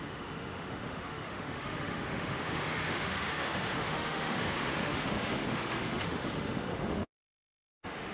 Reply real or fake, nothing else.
fake